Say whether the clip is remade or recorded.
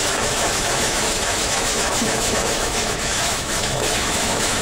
remade